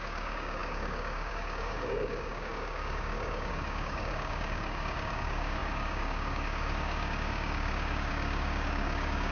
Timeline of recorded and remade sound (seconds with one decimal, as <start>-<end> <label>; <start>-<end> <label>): 0.0-9.3 remade